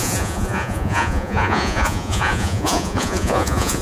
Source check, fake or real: fake